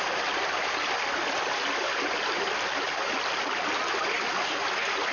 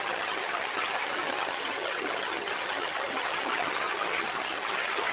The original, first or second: first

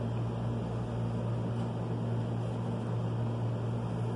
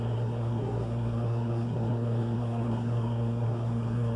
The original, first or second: first